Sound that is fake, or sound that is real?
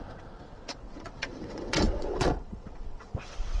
fake